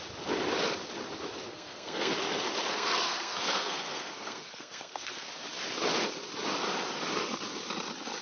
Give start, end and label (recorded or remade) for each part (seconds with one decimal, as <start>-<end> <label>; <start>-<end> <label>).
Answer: 0.0-1.5 recorded; 1.5-2.1 remade; 2.1-2.7 recorded; 2.7-5.3 remade; 5.3-8.2 recorded